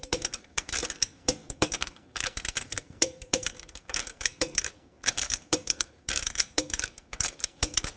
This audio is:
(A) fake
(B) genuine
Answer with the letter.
A